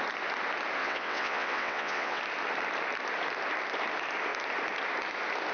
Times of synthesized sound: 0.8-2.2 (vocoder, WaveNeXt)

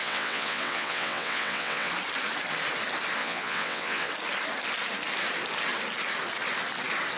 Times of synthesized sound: 0.0-1.9 (vocoder, WaveNeXt); 3.2-4.1

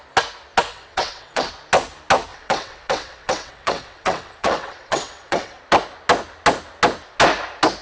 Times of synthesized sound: 0.7-1.5 (vocoder, WaveNeXt); 2.3-5.6

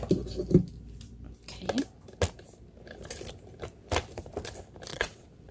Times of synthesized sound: 4.9-5.5 (vocoder, WaveNeXt)

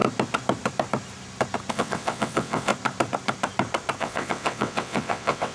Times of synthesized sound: 1.7-2.7 (vocoder, WaveNeXt); 4.0-5.5

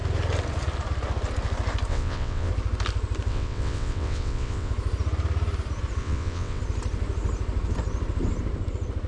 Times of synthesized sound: 1.9-2.5 (vocoder, WaveNeXt); 3.3-4.7; 6.0-6.6